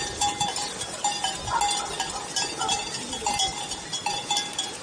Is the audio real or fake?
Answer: real